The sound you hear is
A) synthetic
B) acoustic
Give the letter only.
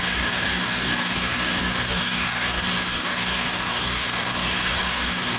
A